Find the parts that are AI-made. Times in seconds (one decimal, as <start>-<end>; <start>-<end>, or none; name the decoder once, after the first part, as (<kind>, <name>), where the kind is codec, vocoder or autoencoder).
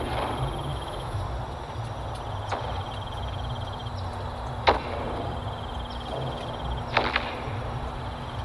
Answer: 0.7-1.2 (autoencoder, DAC-VAE)